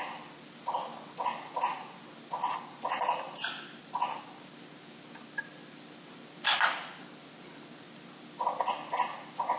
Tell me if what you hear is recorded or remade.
recorded